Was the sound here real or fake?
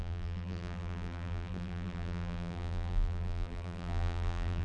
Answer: fake